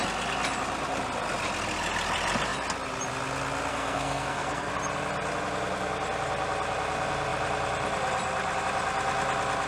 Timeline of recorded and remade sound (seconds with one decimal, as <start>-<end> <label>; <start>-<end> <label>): 0.0-3.7 recorded; 3.7-4.7 remade; 4.7-9.7 recorded